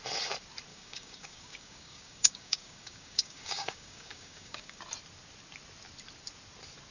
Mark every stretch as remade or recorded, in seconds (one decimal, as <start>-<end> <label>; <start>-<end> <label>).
0.0-0.7 recorded; 0.7-4.8 remade; 4.8-6.9 recorded